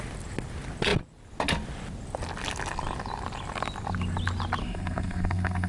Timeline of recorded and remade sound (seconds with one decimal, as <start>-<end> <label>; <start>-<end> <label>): 0.0-4.6 recorded; 4.6-5.7 remade

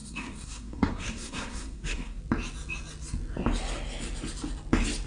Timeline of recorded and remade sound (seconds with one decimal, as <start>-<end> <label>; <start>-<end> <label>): 0.0-2.2 remade; 2.2-5.1 recorded

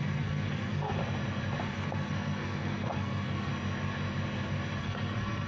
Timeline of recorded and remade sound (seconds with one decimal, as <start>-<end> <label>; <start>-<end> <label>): 0.0-1.0 remade; 1.0-1.6 recorded; 1.6-3.5 remade; 3.5-4.8 recorded; 4.8-5.5 remade

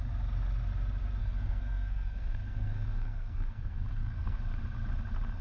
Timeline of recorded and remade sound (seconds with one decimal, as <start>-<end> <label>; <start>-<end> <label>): 0.0-1.2 recorded; 1.2-4.4 remade; 4.4-5.4 recorded

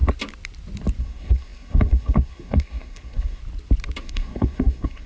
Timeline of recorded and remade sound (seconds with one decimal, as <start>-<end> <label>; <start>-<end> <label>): 0.0-1.0 recorded; 1.0-3.4 remade; 3.4-4.0 recorded; 4.0-5.1 remade

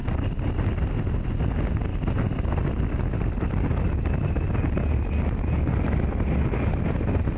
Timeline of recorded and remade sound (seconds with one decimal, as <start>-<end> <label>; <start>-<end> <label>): 0.0-7.4 recorded

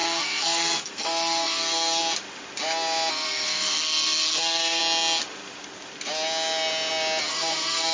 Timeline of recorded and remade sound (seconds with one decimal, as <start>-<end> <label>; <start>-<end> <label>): 0.0-2.0 remade; 2.0-3.1 recorded; 3.1-4.8 remade; 4.8-7.3 recorded; 7.3-7.9 remade

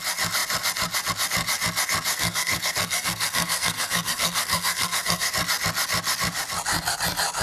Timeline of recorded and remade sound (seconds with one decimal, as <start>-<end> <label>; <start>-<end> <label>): 0.0-2.1 recorded; 2.1-5.3 remade; 5.3-7.4 recorded